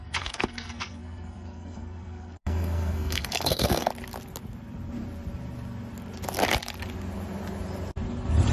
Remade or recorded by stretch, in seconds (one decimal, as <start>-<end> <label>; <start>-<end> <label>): 0.0-3.9 remade; 3.9-8.5 recorded

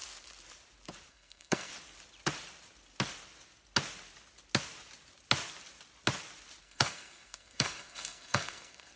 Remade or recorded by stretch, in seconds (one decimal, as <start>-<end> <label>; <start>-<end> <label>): 0.0-1.1 recorded; 1.1-1.7 remade; 1.7-6.6 recorded; 6.6-9.0 remade

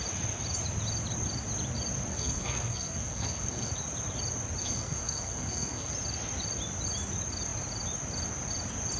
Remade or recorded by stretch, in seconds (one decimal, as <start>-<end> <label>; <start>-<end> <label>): 0.0-2.1 recorded; 2.1-3.7 remade; 3.7-4.6 recorded; 4.6-5.9 remade; 5.9-9.0 recorded

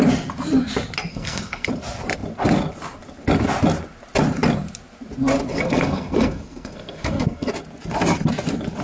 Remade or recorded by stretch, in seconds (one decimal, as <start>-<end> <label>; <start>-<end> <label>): 0.0-1.1 recorded; 1.1-1.7 remade; 1.7-5.5 recorded; 5.5-7.5 remade; 7.5-8.8 recorded

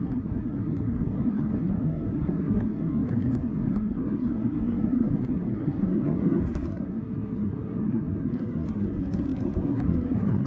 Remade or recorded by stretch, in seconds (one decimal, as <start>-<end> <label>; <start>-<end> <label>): 0.0-10.5 remade

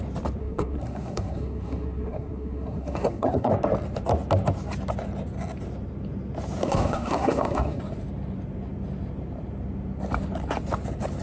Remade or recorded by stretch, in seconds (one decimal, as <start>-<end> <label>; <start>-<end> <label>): 0.0-0.4 recorded; 0.4-3.5 remade; 3.5-6.6 recorded; 6.6-7.8 remade; 7.8-11.2 recorded

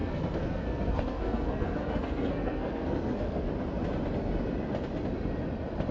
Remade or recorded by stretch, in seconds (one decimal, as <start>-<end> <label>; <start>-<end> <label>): 0.0-3.5 remade; 3.5-5.9 recorded